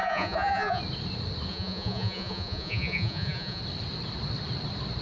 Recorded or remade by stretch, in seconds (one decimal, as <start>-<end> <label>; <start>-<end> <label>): 0.0-0.8 remade; 0.8-1.5 recorded; 1.5-3.6 remade; 3.6-5.0 recorded